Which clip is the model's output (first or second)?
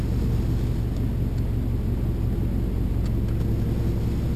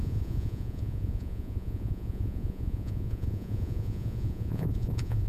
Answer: second